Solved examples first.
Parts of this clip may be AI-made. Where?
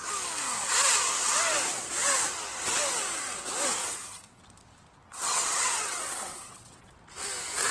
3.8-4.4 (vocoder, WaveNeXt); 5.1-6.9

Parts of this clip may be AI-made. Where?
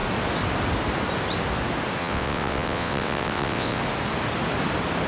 2.0-3.8 (vocoder, WaveNeXt)